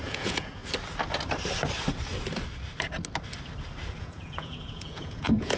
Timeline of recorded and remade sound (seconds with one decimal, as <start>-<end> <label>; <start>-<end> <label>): 0.0-0.6 remade; 0.6-4.0 recorded; 4.0-5.6 remade